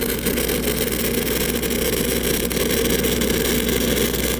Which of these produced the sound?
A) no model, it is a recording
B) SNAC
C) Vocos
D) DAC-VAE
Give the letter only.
A